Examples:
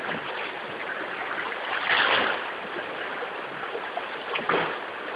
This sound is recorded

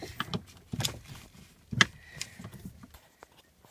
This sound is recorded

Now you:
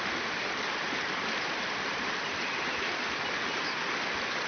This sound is remade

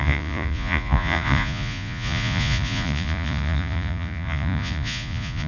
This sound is remade